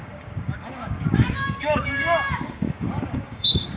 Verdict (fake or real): fake